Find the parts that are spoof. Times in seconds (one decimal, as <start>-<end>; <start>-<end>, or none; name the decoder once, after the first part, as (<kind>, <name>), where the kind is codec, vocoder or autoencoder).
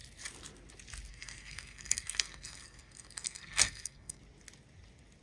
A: 1.1-4.2 (codec, SNAC)